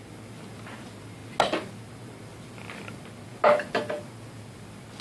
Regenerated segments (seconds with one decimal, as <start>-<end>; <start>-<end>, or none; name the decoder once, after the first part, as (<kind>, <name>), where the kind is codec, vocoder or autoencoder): none